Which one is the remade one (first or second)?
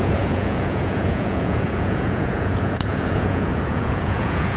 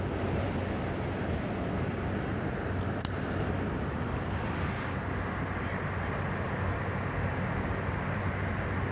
first